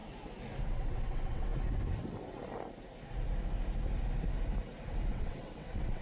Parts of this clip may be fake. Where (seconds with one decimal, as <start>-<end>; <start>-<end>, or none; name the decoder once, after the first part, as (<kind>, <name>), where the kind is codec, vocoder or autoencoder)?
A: 0.6-1.5 (vocoder, WaveNeXt); 5.1-6.0